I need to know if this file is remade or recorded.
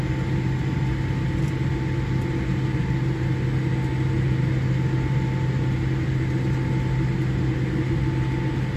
recorded